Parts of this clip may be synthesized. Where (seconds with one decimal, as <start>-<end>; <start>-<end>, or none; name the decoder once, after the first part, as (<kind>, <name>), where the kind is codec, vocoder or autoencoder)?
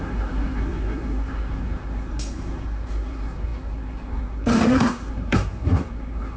0.0-6.4 (codec, SNAC)